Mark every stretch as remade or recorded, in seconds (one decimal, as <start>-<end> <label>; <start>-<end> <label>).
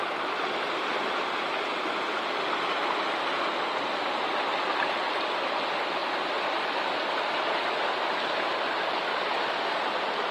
0.0-10.3 recorded